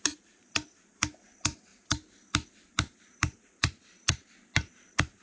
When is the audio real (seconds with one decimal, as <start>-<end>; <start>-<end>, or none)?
3.9-4.7

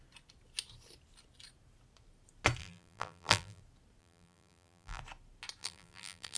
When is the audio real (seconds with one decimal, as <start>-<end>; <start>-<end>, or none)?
0.0-2.6; 3.6-4.0; 5.0-5.6

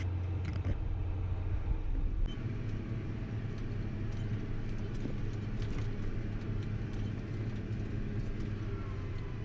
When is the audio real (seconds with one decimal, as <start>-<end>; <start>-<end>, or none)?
0.0-0.5; 1.1-9.4

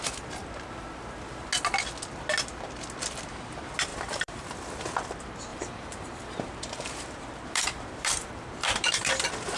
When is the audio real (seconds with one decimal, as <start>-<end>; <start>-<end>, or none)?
0.0-3.9; 4.5-5.5; 9.1-9.6

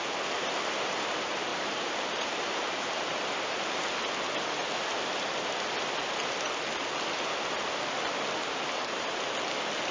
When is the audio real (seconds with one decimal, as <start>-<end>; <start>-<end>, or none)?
0.0-1.5; 3.0-9.9